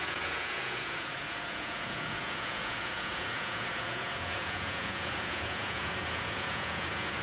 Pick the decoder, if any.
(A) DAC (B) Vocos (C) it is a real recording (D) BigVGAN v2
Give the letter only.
B